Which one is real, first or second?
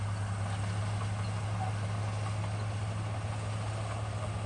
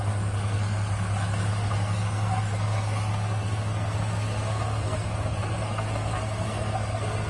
first